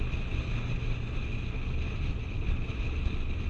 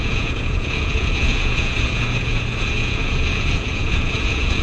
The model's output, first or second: second